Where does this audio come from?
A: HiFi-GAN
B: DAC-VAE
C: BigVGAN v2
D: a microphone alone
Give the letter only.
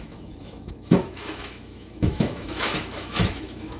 B